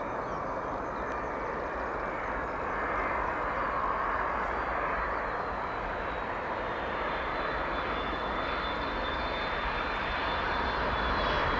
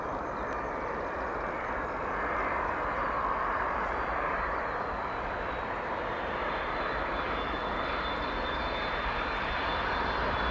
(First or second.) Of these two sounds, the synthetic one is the second